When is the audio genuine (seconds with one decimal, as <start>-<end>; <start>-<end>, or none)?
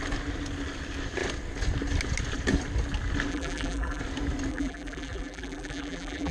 0.0-3.3; 4.0-4.5